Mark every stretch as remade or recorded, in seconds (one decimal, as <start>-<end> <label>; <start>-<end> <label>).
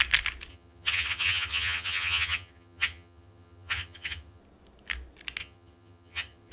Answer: 0.0-0.5 recorded; 0.5-4.4 remade; 4.4-5.4 recorded; 5.4-6.5 remade